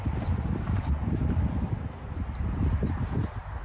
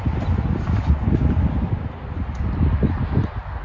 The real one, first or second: second